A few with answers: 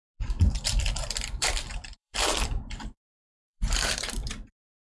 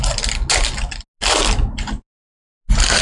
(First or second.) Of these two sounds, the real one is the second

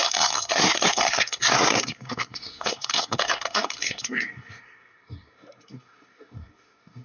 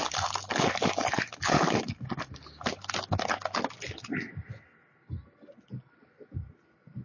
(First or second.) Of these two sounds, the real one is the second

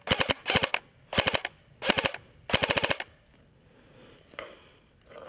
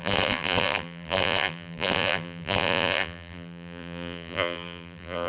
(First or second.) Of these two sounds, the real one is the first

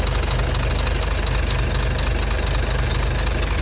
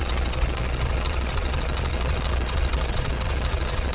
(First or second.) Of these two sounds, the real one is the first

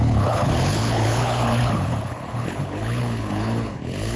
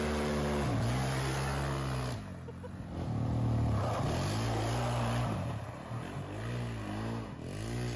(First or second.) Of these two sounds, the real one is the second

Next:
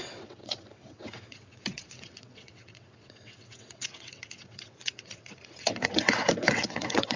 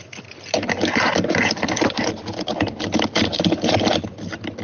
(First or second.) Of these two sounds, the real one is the second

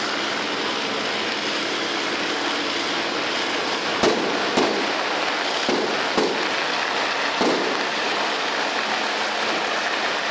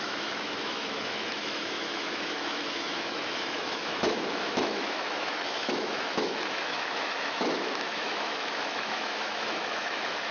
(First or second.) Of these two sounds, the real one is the first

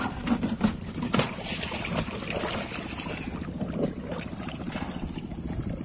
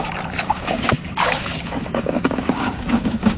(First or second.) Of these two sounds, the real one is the first